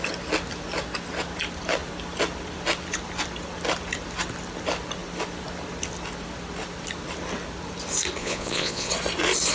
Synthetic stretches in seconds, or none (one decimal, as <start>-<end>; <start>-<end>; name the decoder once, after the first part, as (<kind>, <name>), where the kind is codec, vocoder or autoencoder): 8.2-8.9 (vocoder, Vocos)